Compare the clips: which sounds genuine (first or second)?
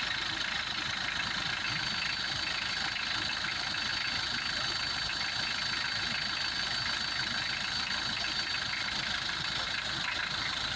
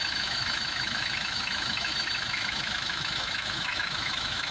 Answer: first